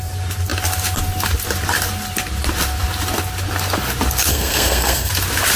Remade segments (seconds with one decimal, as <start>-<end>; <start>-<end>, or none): 4.3-5.1

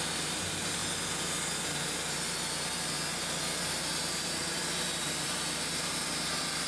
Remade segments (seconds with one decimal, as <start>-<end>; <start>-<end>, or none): 0.0-0.8; 3.8-6.7